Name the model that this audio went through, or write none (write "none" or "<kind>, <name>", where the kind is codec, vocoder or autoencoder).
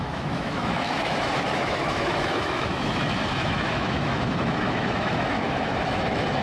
autoencoder, DAC-VAE